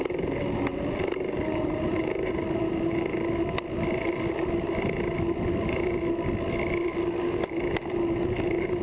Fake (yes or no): no